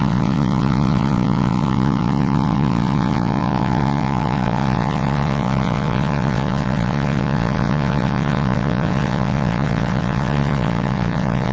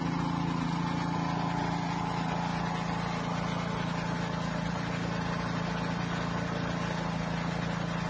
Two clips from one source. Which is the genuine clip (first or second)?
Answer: second